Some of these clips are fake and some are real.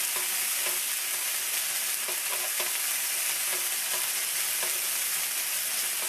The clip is real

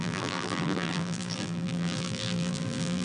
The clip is fake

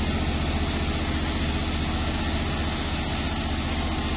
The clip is real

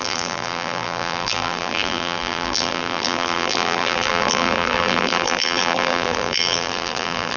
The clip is fake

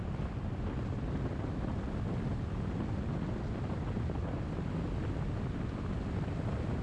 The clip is real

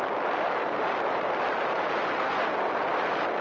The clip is fake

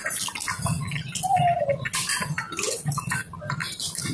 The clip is real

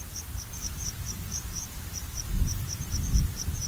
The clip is fake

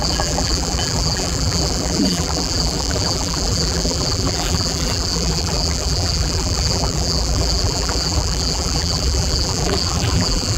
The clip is fake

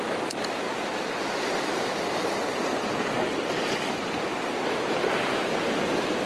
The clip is real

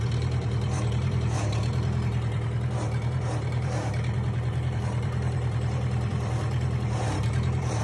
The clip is fake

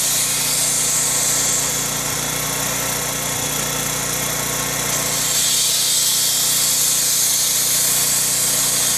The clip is real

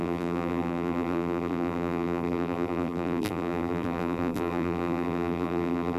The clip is fake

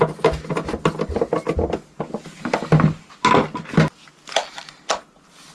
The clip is real